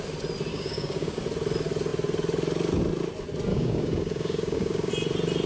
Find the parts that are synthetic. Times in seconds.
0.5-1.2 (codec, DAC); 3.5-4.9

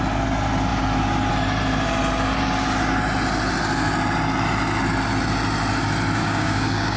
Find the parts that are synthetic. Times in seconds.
6.2-7.0 (codec, DAC)

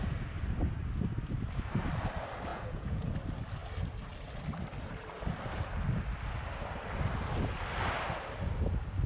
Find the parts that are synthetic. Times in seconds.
2.5-3.1 (vocoder, Vocos)

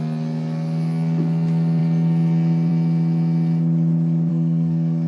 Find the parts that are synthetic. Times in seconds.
4.3-5.1 (codec, SNAC)